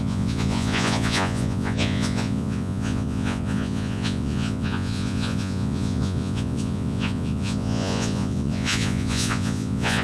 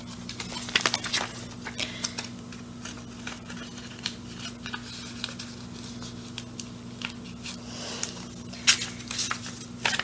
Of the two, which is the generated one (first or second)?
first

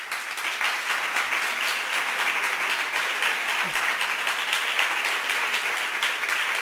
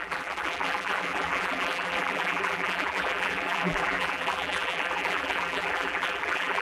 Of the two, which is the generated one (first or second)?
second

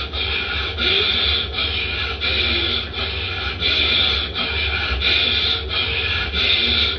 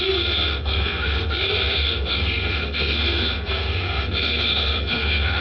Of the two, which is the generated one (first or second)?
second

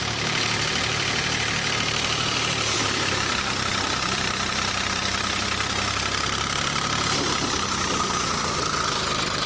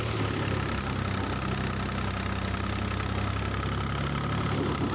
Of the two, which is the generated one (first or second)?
first